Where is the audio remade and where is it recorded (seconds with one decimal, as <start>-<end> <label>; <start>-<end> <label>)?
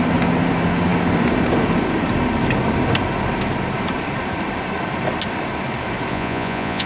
0.0-6.1 recorded; 6.1-6.9 remade